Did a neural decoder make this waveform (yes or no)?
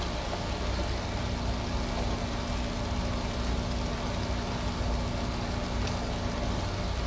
no